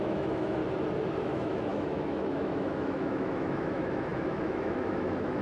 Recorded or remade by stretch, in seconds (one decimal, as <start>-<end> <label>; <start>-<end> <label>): 0.0-0.6 remade; 0.6-1.2 recorded; 1.2-5.4 remade